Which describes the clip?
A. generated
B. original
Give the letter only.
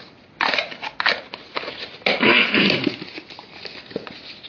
B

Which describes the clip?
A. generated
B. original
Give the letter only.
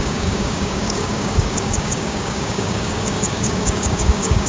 A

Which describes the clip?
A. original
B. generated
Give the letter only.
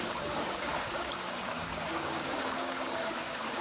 B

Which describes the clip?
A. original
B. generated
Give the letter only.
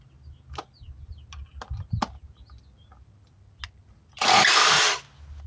A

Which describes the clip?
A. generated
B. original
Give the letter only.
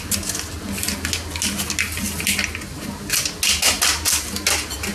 B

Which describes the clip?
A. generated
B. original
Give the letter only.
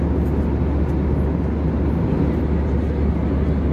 B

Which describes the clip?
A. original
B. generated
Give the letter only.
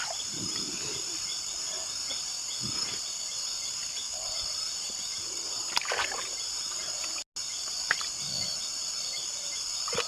A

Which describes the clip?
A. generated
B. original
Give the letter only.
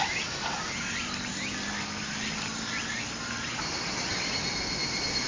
B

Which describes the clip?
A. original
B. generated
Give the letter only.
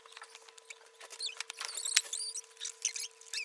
A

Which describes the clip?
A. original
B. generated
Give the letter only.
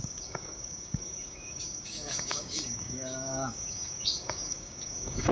B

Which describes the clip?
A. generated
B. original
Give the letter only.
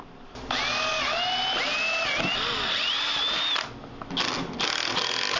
B